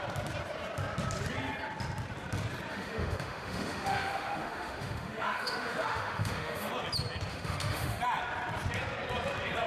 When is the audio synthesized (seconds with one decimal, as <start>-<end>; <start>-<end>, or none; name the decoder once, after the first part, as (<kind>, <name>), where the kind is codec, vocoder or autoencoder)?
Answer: 2.7-6.7 (autoencoder, DAC-VAE); 7.3-8.0